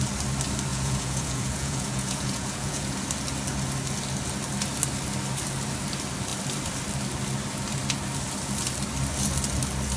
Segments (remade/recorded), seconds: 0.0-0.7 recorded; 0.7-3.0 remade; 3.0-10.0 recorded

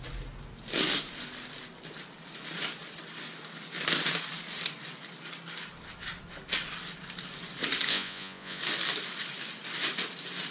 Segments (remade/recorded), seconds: 0.0-7.9 recorded; 7.9-8.6 remade; 8.6-10.5 recorded

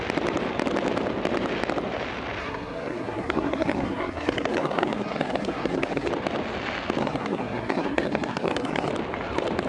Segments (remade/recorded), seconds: 0.0-2.4 recorded; 2.4-6.1 remade; 6.1-7.0 recorded; 7.0-8.9 remade; 8.9-9.7 recorded

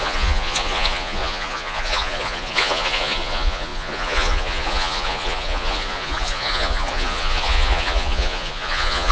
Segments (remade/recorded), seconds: 0.0-9.1 remade

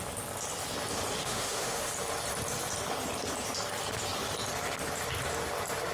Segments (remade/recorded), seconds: 0.0-1.2 recorded; 1.2-1.9 remade; 1.9-5.9 recorded

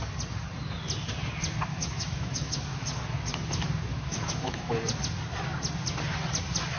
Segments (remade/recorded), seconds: 0.0-1.7 recorded; 1.7-3.0 remade; 3.0-3.9 recorded; 3.9-4.7 remade; 4.7-6.8 recorded

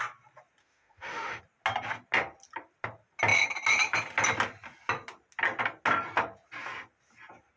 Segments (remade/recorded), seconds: 0.0-0.6 recorded; 0.6-1.4 remade; 1.4-7.6 recorded